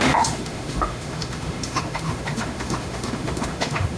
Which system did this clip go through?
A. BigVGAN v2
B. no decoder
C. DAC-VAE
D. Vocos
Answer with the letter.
C